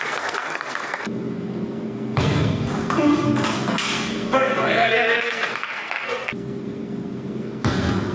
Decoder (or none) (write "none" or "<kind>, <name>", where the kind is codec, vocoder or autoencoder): codec, SNAC